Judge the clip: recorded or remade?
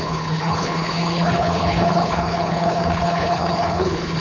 remade